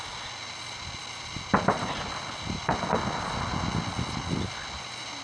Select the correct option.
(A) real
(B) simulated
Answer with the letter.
A